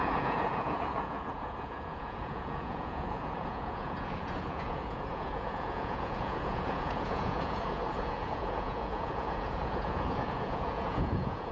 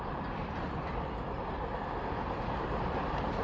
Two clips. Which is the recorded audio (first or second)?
second